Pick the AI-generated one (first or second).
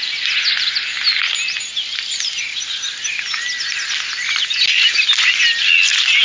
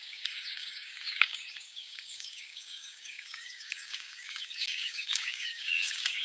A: second